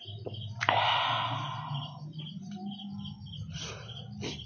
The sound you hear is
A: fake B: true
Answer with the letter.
B